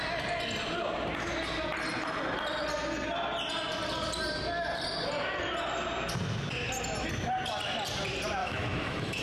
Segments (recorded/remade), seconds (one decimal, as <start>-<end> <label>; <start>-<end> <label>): 0.0-8.4 recorded; 8.4-9.2 remade